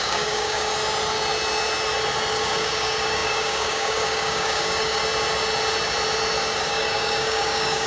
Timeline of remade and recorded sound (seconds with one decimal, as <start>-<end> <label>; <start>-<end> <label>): 0.0-0.7 remade; 0.7-2.3 recorded; 2.3-5.0 remade; 5.0-6.6 recorded; 6.6-7.9 remade